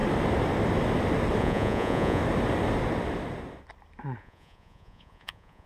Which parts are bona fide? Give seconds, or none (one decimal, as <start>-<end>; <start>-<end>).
0.0-1.4; 2.2-4.2